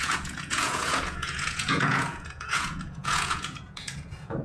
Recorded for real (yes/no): no